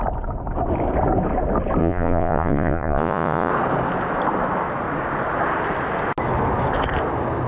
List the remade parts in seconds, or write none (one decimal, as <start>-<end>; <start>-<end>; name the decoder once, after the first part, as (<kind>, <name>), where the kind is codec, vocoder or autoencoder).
1.8-3.5 (vocoder, Vocos)